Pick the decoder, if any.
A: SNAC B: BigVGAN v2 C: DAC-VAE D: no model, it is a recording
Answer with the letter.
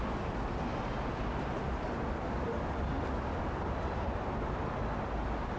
D